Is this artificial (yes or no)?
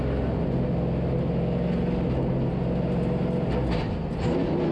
no